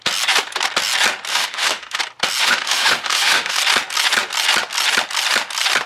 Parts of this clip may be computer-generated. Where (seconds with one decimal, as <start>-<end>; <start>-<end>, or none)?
1.3-2.0; 2.4-3.6